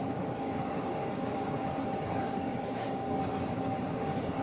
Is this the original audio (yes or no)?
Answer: no